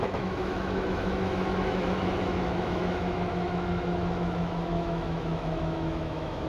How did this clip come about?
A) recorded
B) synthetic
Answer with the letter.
B